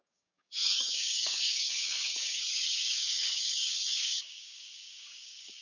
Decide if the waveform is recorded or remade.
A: remade